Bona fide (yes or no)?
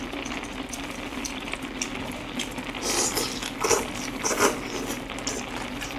yes